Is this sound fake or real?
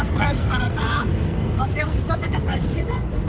fake